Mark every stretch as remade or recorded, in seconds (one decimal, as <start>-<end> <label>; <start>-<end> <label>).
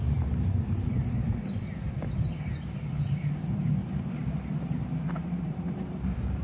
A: 0.0-1.3 remade; 1.3-3.0 recorded; 3.0-6.4 remade